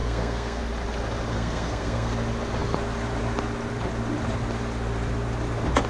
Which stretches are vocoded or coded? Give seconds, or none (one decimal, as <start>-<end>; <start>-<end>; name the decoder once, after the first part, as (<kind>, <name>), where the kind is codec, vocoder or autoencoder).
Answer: 0.0-0.6 (codec, SNAC); 1.3-2.1